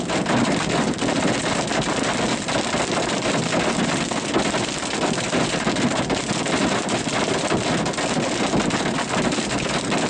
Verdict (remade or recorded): recorded